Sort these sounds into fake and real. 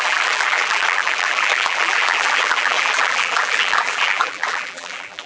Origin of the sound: fake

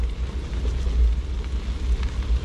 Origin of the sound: real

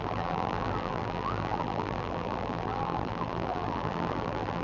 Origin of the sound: fake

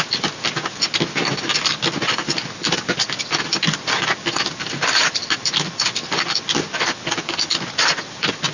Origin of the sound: real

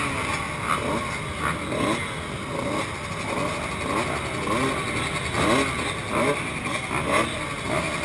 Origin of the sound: real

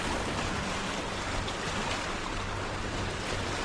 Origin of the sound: fake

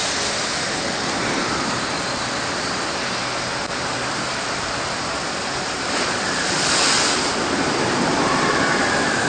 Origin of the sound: real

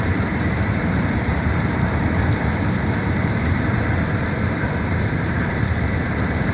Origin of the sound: fake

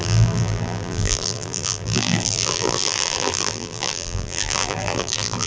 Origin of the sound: fake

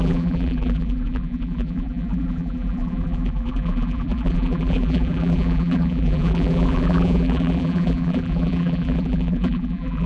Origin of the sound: fake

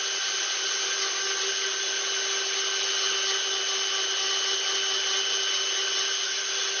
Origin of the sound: real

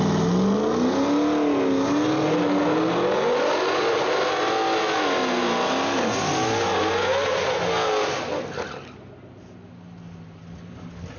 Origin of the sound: real